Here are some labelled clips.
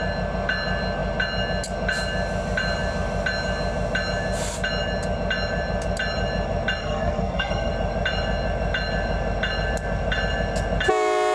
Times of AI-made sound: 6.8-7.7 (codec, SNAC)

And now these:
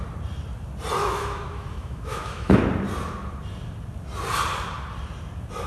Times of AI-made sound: 1.0-2.6 (autoencoder, DAC-VAE)